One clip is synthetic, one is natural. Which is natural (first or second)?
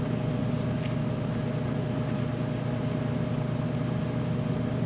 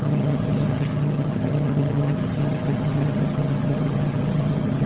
first